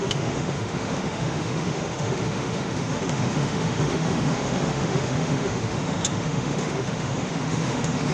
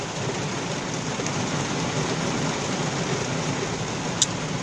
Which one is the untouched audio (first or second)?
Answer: second